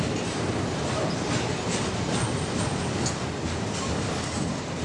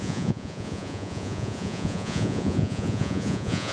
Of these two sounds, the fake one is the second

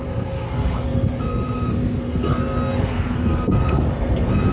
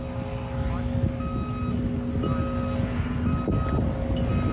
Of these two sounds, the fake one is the first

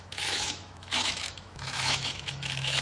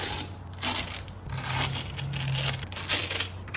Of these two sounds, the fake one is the first